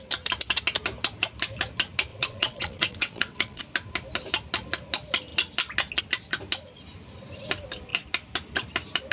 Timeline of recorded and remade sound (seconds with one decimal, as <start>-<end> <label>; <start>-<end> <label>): 0.0-2.1 recorded; 2.1-3.6 remade; 3.6-9.1 recorded